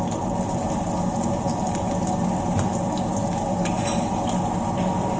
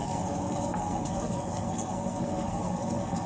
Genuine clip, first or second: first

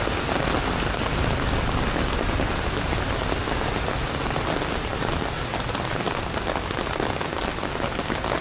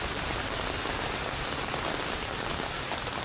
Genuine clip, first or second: first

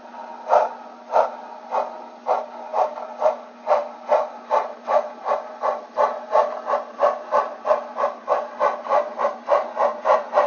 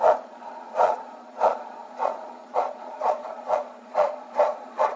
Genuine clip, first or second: first